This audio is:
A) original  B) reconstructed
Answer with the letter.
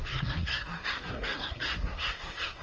B